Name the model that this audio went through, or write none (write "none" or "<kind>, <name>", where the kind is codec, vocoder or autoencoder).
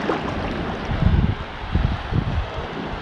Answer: none